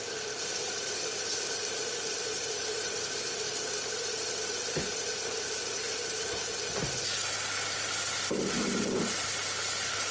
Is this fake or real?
real